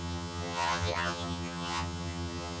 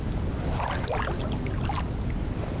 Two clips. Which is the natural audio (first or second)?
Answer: second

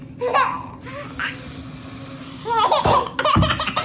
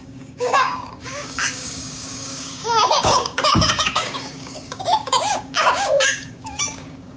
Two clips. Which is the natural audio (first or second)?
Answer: first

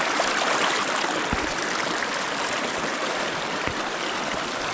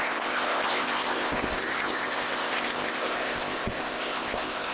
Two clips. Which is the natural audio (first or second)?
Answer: first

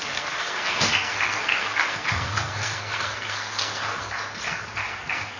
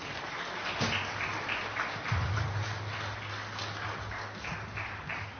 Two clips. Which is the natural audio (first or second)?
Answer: second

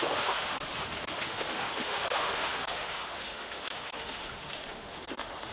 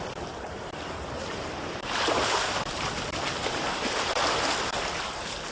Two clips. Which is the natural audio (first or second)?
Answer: second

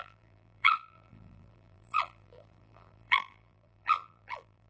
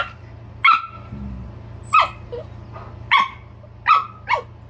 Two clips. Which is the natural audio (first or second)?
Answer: second